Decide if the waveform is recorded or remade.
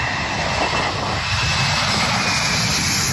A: recorded